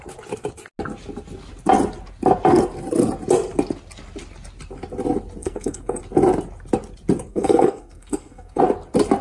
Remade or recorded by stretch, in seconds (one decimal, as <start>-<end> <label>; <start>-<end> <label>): 0.0-5.4 recorded; 5.4-6.0 remade; 6.0-7.3 recorded; 7.3-8.6 remade; 8.6-9.2 recorded